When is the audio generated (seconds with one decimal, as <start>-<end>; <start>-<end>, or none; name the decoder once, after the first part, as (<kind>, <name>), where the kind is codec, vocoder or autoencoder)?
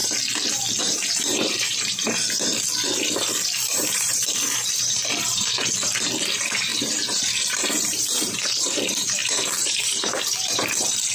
0.8-2.5 (vocoder, BigVGAN v2); 3.7-11.1